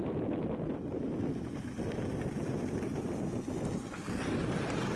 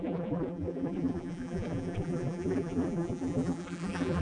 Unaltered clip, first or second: first